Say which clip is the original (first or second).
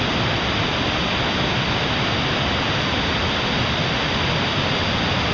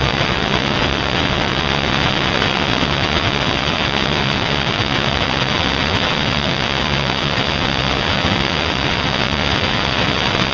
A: first